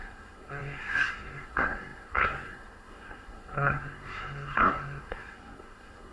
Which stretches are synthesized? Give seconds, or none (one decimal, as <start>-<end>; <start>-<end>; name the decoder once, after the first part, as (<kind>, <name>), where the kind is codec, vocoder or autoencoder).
0.0-6.1 (codec, SNAC)